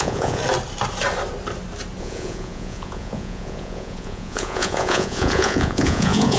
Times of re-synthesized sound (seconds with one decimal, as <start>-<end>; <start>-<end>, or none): 0.0-0.4; 2.0-6.4